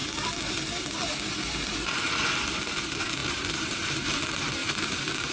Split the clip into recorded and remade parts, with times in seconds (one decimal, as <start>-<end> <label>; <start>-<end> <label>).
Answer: 0.0-3.2 recorded; 3.2-3.9 remade; 3.9-4.6 recorded; 4.6-5.3 remade